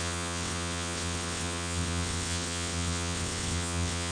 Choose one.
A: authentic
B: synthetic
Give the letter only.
B